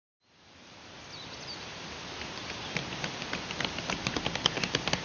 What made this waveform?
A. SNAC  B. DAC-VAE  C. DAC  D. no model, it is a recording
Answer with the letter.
D